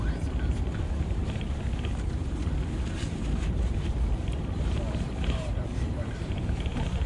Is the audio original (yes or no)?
no